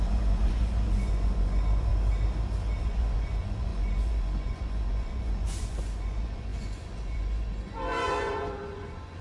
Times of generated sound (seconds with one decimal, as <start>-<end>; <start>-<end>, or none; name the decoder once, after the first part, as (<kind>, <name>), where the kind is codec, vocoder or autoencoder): 0.0-1.9 (vocoder, Vocos); 2.8-9.2